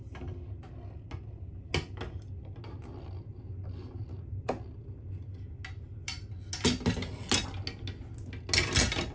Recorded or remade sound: recorded